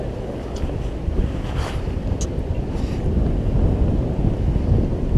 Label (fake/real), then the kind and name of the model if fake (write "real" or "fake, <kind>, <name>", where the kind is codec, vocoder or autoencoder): real